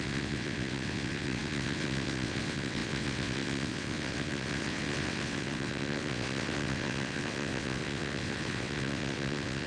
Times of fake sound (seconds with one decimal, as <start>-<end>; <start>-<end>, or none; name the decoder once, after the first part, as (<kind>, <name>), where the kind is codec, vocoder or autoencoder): 0.0-9.7 (vocoder, WaveNeXt)